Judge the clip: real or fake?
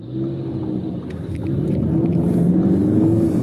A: real